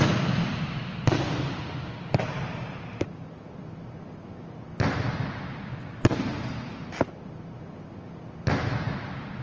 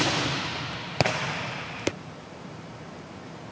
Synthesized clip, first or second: second